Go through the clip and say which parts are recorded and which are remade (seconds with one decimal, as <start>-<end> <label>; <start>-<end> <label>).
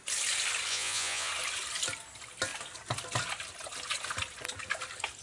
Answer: 0.0-0.7 recorded; 0.7-1.3 remade; 1.3-5.2 recorded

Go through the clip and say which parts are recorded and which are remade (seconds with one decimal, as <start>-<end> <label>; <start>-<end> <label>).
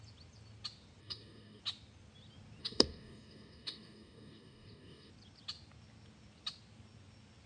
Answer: 0.0-1.0 recorded; 1.0-1.6 remade; 1.6-2.6 recorded; 2.6-5.1 remade; 5.1-7.5 recorded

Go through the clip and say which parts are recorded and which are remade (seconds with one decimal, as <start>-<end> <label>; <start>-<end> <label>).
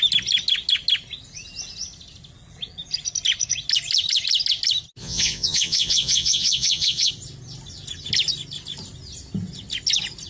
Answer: 0.0-5.0 recorded; 5.0-7.1 remade; 7.1-10.3 recorded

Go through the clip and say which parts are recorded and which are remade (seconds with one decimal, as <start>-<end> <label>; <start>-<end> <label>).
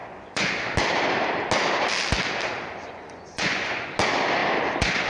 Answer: 0.0-0.5 remade; 0.5-2.8 recorded; 2.8-3.9 remade; 3.9-5.1 recorded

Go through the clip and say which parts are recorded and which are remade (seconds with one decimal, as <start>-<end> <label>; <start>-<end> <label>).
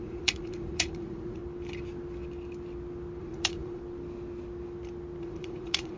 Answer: 0.0-1.4 remade; 1.4-3.2 recorded; 3.2-3.8 remade; 3.8-5.2 recorded; 5.2-6.0 remade